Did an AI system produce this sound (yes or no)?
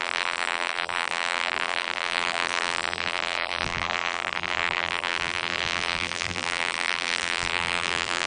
yes